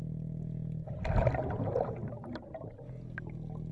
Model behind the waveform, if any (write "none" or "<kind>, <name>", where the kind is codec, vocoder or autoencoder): none